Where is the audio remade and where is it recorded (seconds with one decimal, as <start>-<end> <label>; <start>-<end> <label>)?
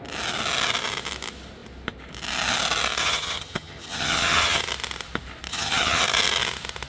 0.0-3.0 recorded; 3.0-4.6 remade; 4.6-5.5 recorded; 5.5-6.0 remade; 6.0-6.9 recorded